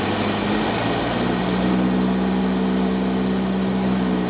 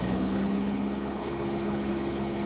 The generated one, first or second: second